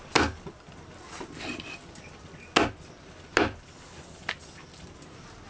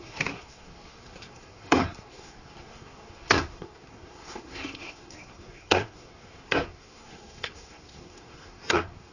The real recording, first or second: first